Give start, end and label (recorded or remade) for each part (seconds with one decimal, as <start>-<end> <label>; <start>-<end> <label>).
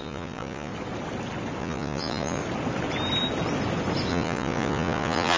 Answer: 0.0-0.7 remade; 0.7-1.6 recorded; 1.6-2.4 remade; 2.4-4.1 recorded; 4.1-5.4 remade